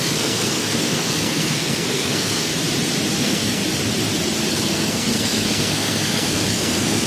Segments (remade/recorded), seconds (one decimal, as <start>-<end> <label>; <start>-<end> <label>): 0.0-2.5 remade; 2.5-3.2 recorded; 3.2-3.6 remade; 3.6-4.5 recorded; 4.5-7.1 remade